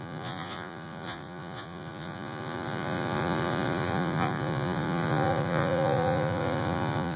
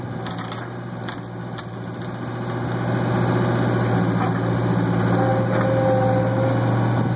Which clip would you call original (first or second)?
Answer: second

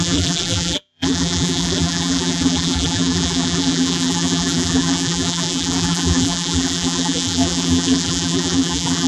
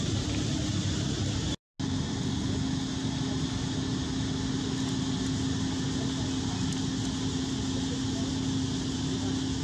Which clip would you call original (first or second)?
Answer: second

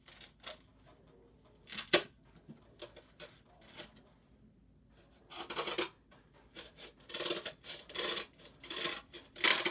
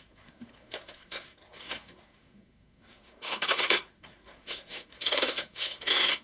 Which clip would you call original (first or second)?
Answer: first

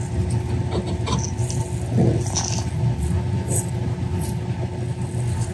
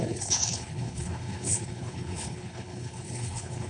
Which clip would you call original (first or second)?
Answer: first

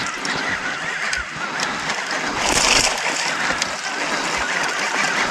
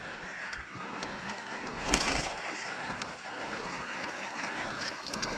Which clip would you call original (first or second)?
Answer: first